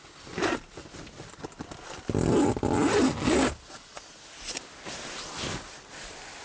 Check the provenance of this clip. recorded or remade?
recorded